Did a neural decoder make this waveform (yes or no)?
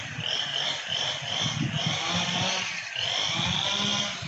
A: no